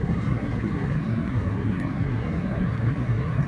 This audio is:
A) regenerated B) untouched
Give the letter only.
A